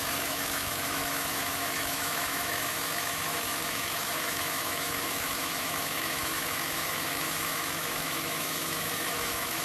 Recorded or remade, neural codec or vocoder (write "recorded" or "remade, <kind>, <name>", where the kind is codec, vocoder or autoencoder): remade, autoencoder, DAC-VAE